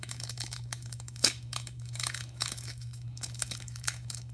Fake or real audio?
fake